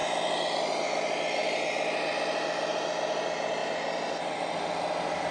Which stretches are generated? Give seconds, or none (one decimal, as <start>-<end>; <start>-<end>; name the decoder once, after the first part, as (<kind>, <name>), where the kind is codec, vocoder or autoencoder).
none